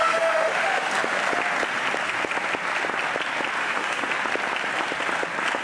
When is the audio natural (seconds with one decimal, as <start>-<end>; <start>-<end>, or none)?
0.9-3.6; 4.1-5.6